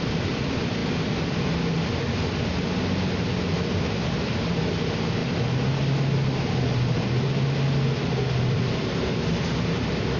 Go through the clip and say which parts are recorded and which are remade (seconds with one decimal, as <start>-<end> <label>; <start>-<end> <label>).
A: 0.0-0.8 remade; 0.8-4.6 recorded; 4.6-5.2 remade; 5.2-8.5 recorded; 8.5-10.2 remade